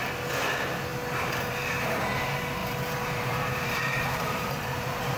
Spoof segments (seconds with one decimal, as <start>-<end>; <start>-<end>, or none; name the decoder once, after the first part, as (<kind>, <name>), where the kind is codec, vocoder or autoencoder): 2.6-5.2 (vocoder, BigVGAN v2)